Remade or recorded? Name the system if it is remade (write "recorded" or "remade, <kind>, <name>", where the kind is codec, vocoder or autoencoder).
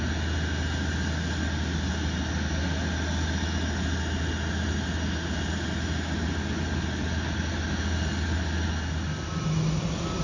recorded